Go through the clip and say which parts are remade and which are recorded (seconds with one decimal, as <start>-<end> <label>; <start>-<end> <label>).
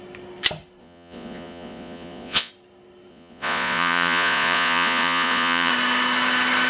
0.0-0.8 recorded; 0.8-2.5 remade; 2.5-3.1 recorded; 3.1-5.7 remade; 5.7-6.7 recorded